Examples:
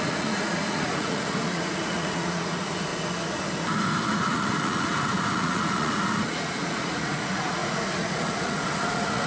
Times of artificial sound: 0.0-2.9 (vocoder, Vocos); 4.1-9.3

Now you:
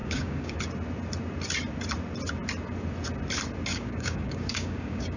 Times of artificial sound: 0.0-0.6 (codec, DAC); 3.7-5.2

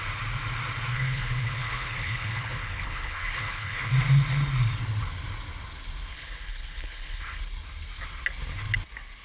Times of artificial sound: 0.9-3.9 (codec, HILCodec); 6.1-7.4